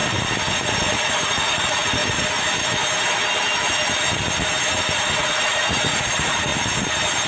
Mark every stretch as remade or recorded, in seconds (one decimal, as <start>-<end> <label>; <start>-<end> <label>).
0.0-0.5 recorded; 0.5-2.0 remade; 2.0-5.0 recorded; 5.0-6.5 remade; 6.5-7.3 recorded